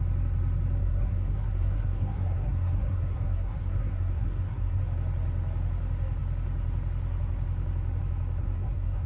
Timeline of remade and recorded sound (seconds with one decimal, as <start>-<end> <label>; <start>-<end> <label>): 0.0-0.8 recorded; 0.8-4.8 remade; 4.8-8.4 recorded; 8.4-9.1 remade